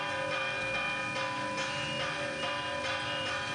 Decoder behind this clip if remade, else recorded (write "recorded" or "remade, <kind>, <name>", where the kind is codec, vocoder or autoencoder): recorded